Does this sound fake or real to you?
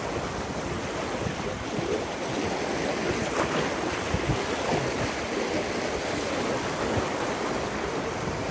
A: real